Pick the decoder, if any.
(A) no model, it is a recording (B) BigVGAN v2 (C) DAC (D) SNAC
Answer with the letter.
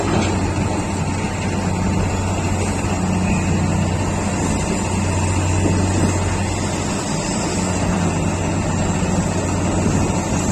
A